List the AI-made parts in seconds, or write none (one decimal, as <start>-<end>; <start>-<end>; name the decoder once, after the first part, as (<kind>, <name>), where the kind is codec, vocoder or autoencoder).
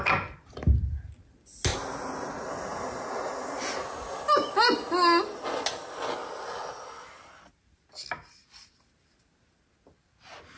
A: none